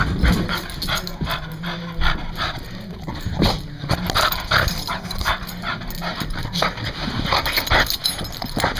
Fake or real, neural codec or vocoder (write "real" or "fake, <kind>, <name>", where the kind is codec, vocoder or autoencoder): real